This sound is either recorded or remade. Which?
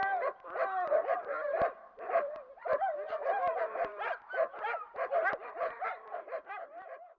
remade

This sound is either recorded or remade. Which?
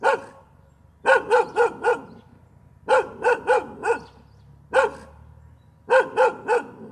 recorded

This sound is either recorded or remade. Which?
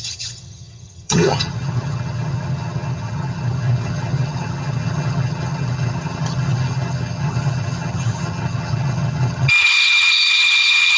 remade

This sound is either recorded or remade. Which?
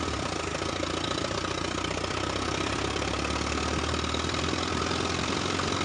remade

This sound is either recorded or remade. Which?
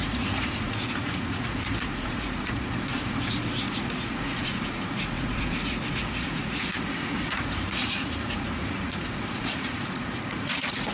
remade